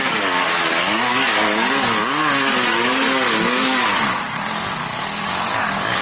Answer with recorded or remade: remade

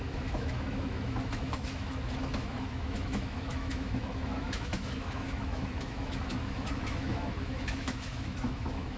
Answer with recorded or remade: remade